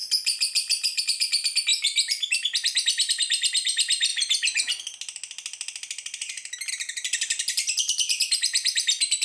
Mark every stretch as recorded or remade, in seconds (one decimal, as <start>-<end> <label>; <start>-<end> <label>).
0.0-9.2 recorded